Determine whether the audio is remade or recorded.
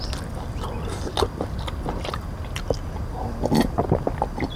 recorded